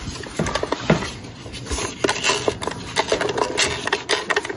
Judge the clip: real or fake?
real